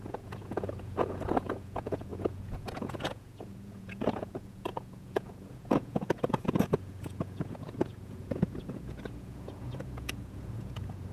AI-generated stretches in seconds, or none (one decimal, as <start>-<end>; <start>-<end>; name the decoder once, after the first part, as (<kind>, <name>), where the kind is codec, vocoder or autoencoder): 0.0-11.1 (vocoder, Vocos)